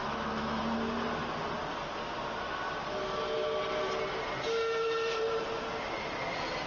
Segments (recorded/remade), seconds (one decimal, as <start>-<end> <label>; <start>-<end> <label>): 0.0-0.6 remade; 0.6-6.7 recorded